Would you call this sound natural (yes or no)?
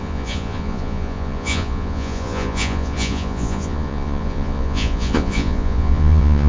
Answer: no